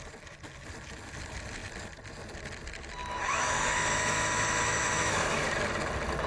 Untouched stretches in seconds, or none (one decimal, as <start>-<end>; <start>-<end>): 0.0-3.0; 5.5-6.3